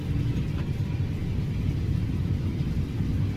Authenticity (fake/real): real